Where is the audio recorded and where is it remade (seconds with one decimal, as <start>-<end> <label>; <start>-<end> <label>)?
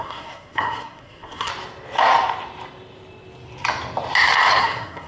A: 0.0-1.5 remade; 1.5-4.6 recorded; 4.6-5.1 remade